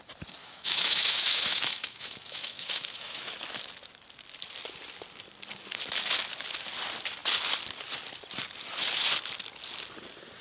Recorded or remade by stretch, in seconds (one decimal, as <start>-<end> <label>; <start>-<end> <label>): 0.0-0.4 recorded; 0.4-3.3 remade; 3.3-10.4 recorded